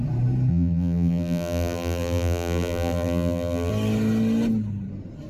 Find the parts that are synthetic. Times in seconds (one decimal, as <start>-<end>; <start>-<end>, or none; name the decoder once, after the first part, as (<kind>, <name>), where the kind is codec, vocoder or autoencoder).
0.5-3.7 (vocoder, BigVGAN v2)